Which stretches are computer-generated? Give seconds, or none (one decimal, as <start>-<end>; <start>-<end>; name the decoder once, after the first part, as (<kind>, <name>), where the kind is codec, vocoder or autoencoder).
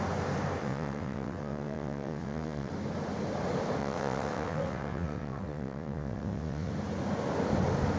0.6-2.7 (vocoder, WaveNeXt); 3.8-6.7